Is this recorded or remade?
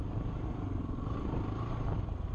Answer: recorded